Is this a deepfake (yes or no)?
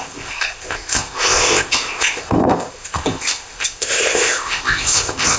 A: yes